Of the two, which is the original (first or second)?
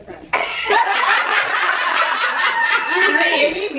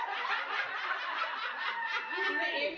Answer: second